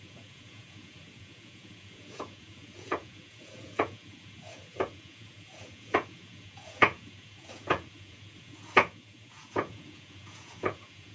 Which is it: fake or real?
fake